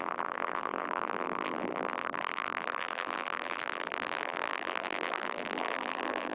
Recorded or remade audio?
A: remade